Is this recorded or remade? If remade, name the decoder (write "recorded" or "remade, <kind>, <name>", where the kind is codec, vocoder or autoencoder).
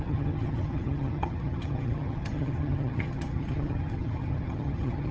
remade, vocoder, HiFi-GAN